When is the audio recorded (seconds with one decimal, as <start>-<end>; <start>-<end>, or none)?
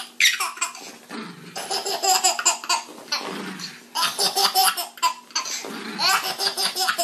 0.0-7.0